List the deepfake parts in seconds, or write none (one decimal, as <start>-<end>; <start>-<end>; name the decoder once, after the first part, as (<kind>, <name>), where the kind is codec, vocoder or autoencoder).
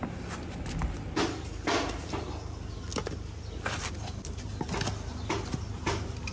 none